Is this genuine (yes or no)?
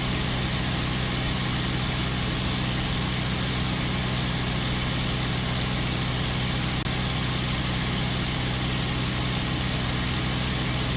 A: yes